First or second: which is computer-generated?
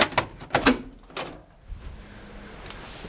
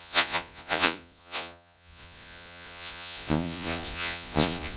second